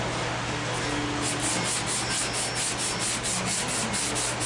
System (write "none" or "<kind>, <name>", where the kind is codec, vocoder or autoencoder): none